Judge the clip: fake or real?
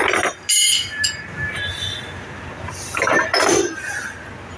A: real